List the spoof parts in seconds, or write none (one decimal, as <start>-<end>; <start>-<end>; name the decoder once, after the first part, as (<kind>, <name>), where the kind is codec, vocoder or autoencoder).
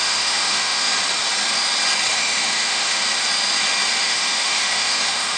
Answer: 0.0-0.9 (autoencoder, DAC-VAE); 2.1-3.0; 4.0-5.4